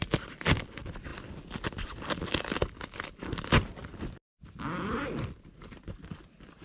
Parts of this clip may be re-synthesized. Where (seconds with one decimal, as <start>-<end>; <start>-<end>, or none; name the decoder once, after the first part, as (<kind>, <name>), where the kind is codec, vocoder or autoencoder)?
none